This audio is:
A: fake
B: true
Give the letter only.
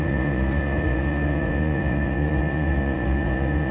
A